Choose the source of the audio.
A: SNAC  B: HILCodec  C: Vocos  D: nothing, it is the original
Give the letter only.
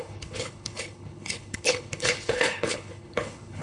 B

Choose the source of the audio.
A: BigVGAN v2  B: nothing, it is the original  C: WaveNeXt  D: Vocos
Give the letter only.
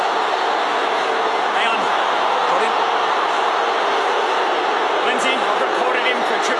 B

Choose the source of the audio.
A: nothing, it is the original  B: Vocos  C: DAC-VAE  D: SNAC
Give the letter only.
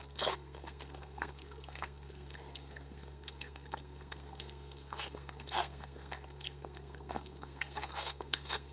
D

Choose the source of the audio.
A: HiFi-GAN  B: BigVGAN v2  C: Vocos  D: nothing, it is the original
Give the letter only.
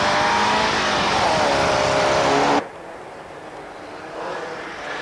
D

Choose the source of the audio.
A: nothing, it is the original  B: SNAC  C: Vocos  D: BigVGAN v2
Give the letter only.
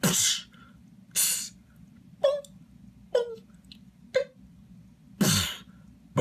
A